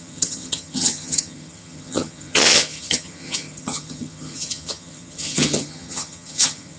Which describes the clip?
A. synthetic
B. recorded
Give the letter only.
A